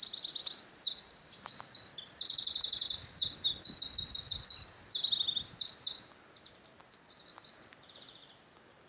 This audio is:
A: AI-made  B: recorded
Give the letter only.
B